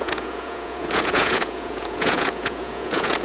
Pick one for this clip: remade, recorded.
remade